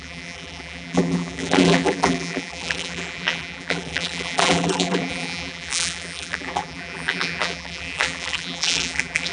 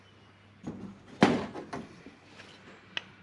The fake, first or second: first